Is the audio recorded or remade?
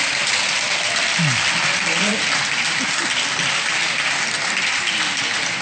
recorded